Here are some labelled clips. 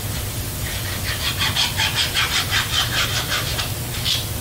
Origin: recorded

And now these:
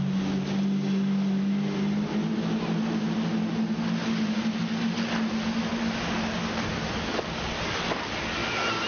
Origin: recorded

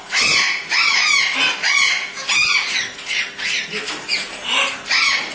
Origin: recorded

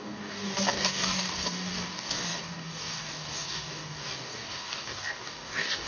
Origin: remade